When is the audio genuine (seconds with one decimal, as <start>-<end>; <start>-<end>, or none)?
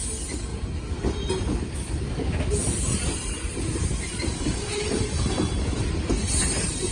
0.0-2.6